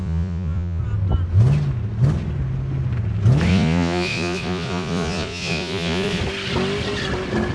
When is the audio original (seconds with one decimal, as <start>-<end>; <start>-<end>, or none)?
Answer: 0.8-3.5; 6.2-7.5

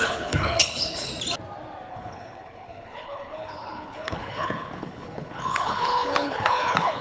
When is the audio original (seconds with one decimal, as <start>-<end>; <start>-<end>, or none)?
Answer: 1.1-1.9